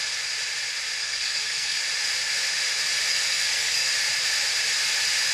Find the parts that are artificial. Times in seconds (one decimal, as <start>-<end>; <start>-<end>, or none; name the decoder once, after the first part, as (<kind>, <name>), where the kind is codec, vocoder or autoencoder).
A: 1.0-1.8 (codec, SNAC); 3.1-3.9